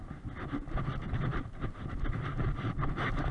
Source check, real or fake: real